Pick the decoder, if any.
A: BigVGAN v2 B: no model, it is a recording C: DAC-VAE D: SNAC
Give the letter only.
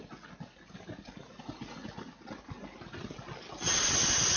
B